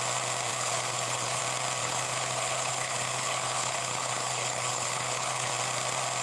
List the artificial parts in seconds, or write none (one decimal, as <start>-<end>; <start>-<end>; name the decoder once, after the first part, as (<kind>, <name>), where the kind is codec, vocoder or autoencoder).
0.5-1.4 (codec, HILCodec); 1.8-5.5